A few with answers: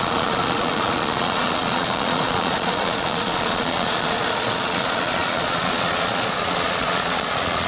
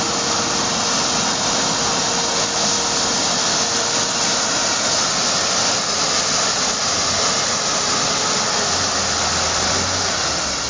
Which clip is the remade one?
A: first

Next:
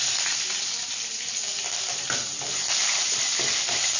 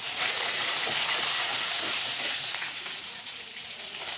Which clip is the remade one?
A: second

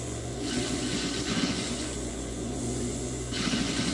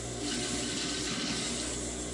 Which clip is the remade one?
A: first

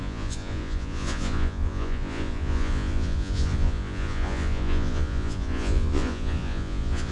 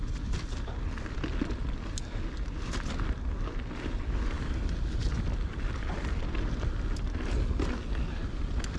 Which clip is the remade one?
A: first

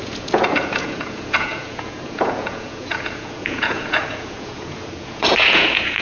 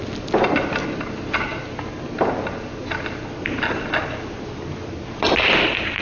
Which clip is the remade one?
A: first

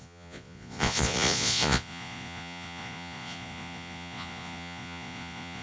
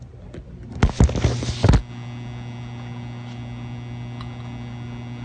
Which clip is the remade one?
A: first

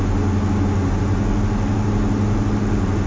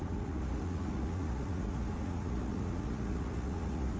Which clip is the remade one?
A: second